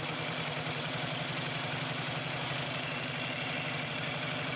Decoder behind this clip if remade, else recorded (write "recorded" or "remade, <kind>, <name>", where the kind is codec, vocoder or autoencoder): remade, vocoder, BigVGAN v2